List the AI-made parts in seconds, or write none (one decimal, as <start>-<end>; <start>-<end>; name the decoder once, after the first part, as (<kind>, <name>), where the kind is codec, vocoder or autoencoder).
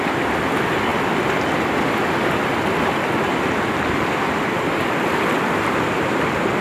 none